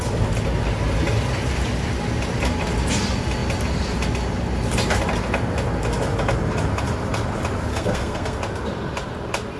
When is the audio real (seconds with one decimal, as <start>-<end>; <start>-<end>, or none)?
0.0-7.7; 8.4-9.6